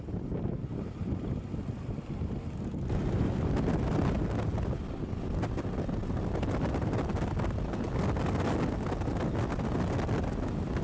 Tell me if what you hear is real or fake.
real